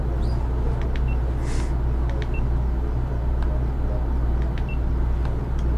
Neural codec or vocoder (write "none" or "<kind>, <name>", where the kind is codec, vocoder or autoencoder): none